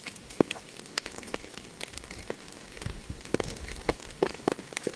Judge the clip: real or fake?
fake